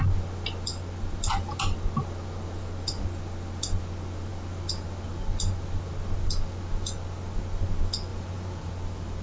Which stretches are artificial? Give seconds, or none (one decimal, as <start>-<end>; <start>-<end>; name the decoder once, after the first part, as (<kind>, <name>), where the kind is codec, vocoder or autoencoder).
8.1-8.7 (vocoder, BigVGAN v2)